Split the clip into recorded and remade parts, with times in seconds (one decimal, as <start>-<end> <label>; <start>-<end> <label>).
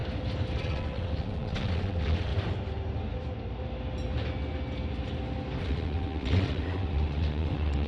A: 0.0-0.6 recorded; 0.6-2.3 remade; 2.3-5.6 recorded; 5.6-7.9 remade